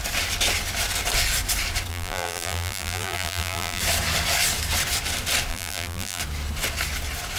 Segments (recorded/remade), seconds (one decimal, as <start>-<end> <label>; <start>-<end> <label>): 0.0-1.9 recorded; 1.9-3.8 remade; 3.8-5.5 recorded; 5.5-6.2 remade; 6.2-7.4 recorded